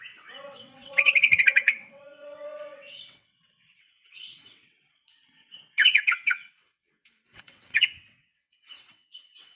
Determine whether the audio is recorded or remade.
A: remade